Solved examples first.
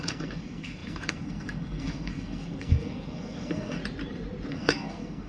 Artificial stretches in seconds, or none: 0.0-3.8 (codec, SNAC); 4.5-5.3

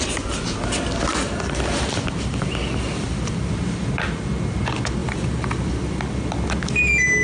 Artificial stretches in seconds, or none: 1.1-3.5 (vocoder, BigVGAN v2); 5.0-6.0